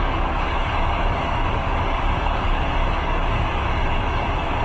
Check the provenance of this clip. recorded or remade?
remade